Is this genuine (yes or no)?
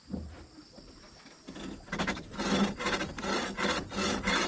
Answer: yes